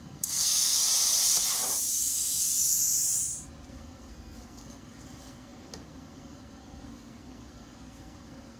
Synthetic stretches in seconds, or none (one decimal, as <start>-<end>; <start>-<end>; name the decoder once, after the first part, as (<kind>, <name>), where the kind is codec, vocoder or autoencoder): 0.0-0.8 (codec, SNAC); 1.9-2.8; 3.7-8.6